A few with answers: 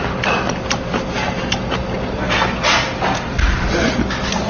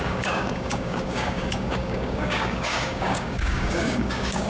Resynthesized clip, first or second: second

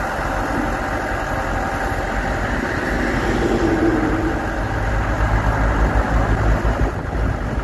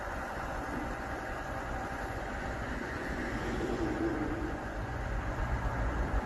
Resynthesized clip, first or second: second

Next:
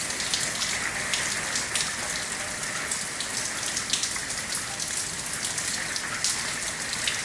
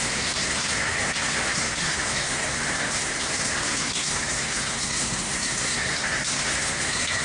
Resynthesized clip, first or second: second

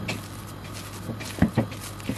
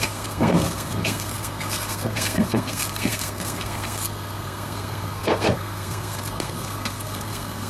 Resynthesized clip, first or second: second